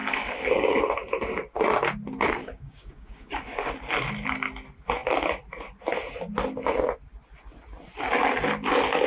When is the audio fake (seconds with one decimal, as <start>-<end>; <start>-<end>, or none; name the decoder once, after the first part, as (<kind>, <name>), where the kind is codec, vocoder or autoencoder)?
0.0-0.8 (codec, DAC); 2.4-3.7

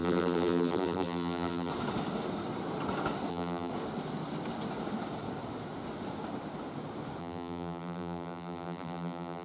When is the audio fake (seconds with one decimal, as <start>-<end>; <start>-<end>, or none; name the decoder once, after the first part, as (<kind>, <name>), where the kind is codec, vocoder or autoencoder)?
0.0-1.7 (vocoder, BigVGAN v2); 3.3-3.7; 7.2-9.4

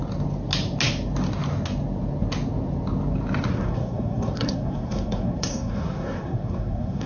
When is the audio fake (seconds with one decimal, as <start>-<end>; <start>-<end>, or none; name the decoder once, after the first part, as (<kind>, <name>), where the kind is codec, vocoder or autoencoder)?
3.5-7.1 (codec, SNAC)

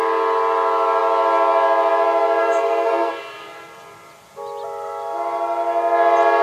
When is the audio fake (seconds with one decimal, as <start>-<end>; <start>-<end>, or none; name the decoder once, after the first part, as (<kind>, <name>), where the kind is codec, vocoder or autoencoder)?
2.4-3.1 (codec, SNAC)

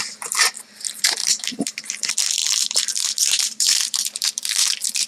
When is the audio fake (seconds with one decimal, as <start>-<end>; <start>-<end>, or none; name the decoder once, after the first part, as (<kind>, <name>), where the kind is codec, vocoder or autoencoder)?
1.2-1.9 (vocoder, BigVGAN v2); 2.4-3.8

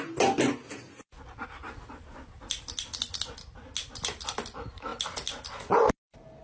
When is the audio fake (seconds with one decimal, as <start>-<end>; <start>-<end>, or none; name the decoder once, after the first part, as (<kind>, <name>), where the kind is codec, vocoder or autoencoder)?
none

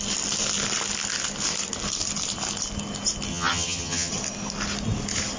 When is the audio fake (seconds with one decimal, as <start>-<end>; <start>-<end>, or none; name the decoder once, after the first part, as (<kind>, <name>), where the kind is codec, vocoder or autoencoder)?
3.3-4.1 (vocoder, HiFi-GAN)

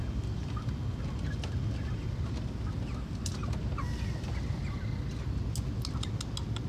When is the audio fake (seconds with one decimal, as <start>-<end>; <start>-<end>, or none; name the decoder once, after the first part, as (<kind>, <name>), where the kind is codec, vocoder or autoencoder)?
none